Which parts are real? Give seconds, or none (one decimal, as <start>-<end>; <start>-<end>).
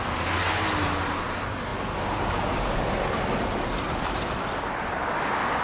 0.0-5.6